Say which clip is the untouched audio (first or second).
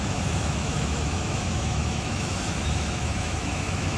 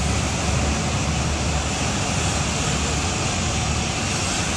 second